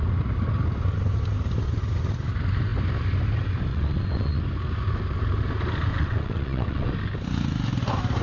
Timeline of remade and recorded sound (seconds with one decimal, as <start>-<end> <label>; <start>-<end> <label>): 0.0-3.7 recorded; 3.7-4.4 remade; 4.4-5.9 recorded; 5.9-6.9 remade; 6.9-8.2 recorded

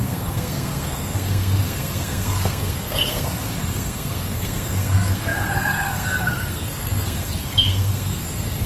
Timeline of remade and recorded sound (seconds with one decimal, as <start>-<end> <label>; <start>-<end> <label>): 0.0-8.7 remade

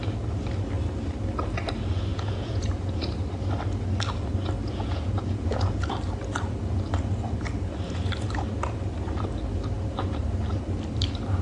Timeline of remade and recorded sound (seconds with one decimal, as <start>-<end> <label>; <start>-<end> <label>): 0.0-2.1 recorded; 2.1-3.0 remade; 3.0-4.6 recorded; 4.6-5.8 remade; 5.8-11.4 recorded